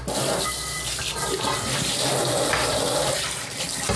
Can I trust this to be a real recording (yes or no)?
yes